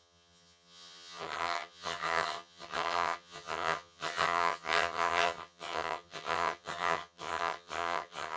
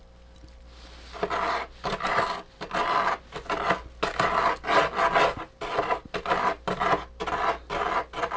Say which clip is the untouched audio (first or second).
second